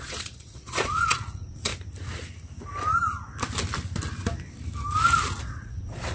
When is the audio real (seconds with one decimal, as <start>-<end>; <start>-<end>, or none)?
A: 1.7-5.4